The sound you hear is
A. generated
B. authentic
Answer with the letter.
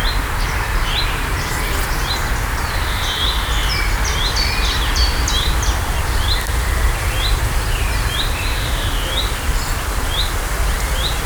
A